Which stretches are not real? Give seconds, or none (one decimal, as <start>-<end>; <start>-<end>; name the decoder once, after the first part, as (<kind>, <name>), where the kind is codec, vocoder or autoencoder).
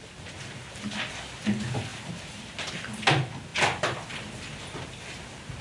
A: none